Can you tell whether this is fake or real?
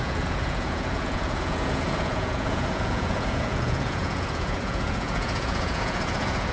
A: fake